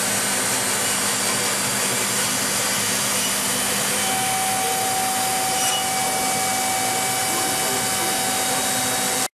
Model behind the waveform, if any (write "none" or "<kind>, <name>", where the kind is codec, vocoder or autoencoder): none